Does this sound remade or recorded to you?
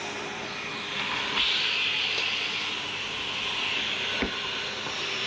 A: recorded